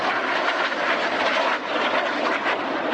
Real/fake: real